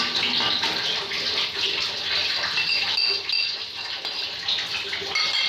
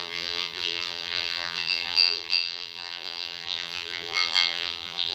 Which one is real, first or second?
first